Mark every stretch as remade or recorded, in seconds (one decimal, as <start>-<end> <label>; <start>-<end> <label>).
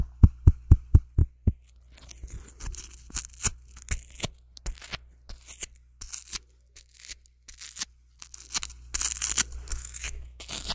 0.0-9.7 recorded; 9.7-10.7 remade